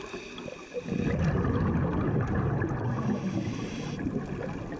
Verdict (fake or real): real